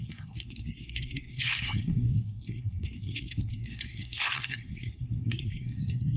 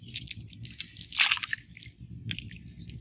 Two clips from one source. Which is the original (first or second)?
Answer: second